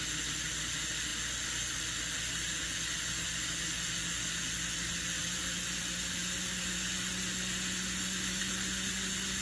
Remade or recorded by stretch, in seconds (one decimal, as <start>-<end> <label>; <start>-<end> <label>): 0.0-9.4 recorded